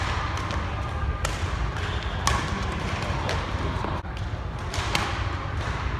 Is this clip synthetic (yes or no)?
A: no